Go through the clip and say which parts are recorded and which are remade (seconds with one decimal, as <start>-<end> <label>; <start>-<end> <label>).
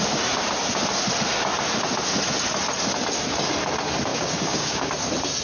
0.0-4.1 recorded; 4.1-4.9 remade; 4.9-5.4 recorded